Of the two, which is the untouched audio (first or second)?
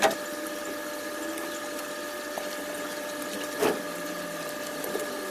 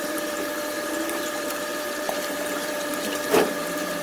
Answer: first